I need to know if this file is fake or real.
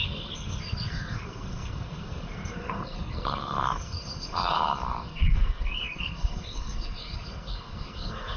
fake